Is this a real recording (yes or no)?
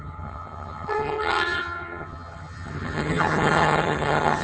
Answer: no